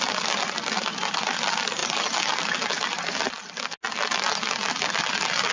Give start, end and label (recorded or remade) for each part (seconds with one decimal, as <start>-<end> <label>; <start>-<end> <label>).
0.0-5.5 recorded